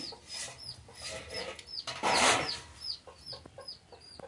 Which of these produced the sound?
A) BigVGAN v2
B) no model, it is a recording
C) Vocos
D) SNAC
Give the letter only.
B